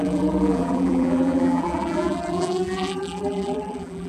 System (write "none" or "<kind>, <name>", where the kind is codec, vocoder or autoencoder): vocoder, BigVGAN v2